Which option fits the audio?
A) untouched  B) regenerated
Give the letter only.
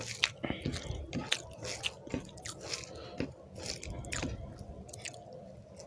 A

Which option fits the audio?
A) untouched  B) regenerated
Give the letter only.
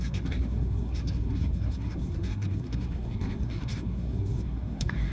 B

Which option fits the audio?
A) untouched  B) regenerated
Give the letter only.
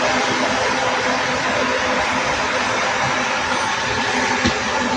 B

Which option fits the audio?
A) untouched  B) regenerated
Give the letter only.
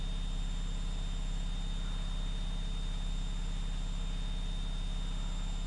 A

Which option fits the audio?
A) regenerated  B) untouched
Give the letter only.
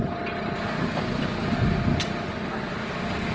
B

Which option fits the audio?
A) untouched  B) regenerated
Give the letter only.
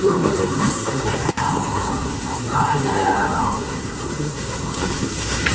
B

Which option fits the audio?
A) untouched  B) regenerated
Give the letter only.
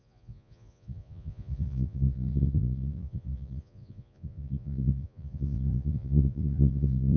B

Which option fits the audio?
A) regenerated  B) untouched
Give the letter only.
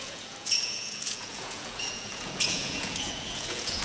A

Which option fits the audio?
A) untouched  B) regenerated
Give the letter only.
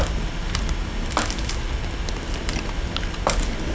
A